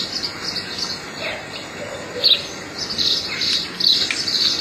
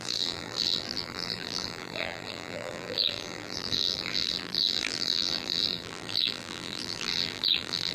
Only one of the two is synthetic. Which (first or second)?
second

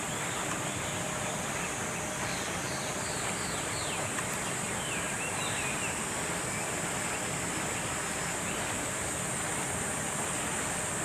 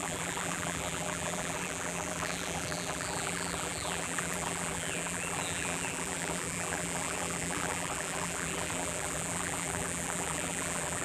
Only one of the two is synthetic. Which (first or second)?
second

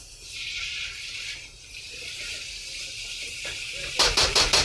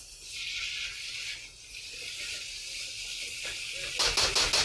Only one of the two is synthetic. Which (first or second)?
first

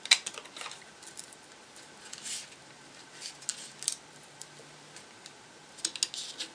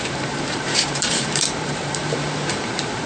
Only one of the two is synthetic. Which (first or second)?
second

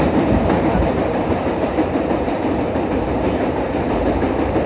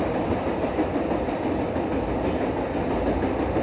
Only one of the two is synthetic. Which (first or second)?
first